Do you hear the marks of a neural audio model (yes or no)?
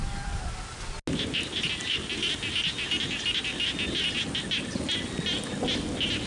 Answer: no